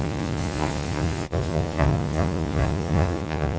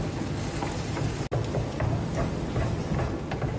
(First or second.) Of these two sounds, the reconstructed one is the first